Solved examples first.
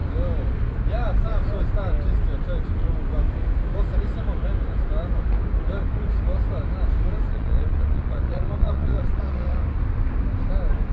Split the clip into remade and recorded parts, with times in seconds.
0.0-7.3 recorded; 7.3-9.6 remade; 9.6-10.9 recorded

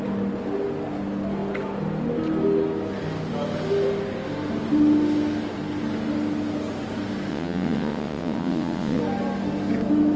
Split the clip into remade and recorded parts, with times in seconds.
0.0-7.3 recorded; 7.3-9.0 remade; 9.0-10.2 recorded

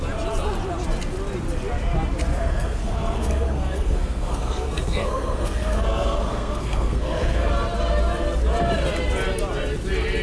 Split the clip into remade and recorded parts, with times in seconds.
0.0-2.3 recorded; 2.3-7.5 remade; 7.5-10.2 recorded

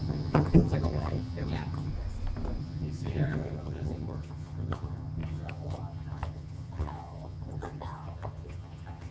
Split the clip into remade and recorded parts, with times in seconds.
0.0-1.9 remade; 1.9-2.6 recorded; 2.6-9.1 remade

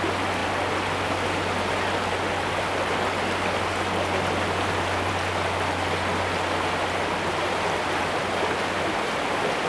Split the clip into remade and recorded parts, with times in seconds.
0.0-9.7 recorded

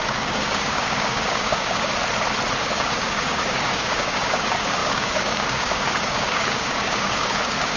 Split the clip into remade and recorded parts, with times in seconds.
0.0-1.9 remade; 1.9-2.6 recorded; 2.6-7.8 remade

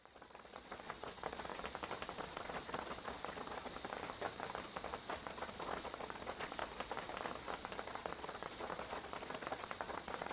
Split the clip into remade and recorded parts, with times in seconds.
0.0-1.5 remade; 1.5-2.1 recorded; 2.1-3.7 remade; 3.7-5.1 recorded; 5.1-6.6 remade; 6.6-7.8 recorded; 7.8-10.3 remade

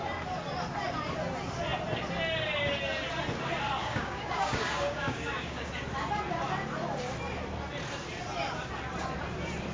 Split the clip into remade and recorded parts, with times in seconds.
0.0-3.8 recorded; 3.8-5.7 remade; 5.7-9.7 recorded